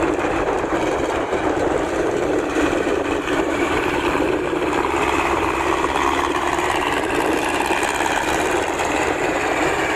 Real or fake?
fake